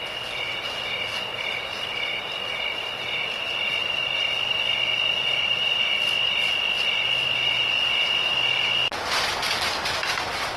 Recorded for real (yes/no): yes